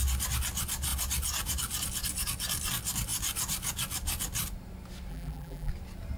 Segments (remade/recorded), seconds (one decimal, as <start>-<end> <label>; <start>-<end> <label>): 0.0-5.1 recorded; 5.1-5.7 remade; 5.7-6.2 recorded